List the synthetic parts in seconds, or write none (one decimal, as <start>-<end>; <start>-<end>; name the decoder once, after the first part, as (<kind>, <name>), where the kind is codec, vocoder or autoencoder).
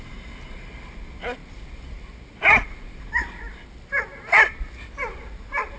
none